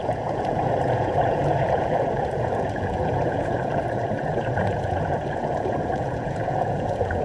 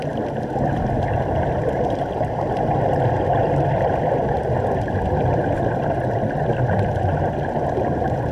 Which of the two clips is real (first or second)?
second